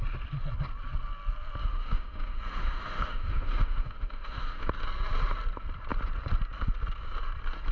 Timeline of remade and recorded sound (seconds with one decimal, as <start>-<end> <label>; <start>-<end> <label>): 0.0-1.6 recorded; 1.6-4.7 remade; 4.7-7.7 recorded